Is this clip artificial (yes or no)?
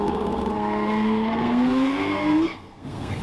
yes